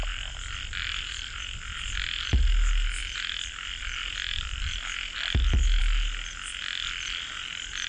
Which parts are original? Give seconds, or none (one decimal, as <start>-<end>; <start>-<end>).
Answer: 0.0-7.9